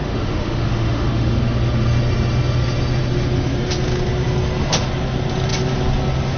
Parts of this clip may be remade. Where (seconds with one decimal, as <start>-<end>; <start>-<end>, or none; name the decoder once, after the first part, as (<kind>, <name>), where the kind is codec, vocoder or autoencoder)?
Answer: 0.0-1.4 (autoencoder, DAC-VAE)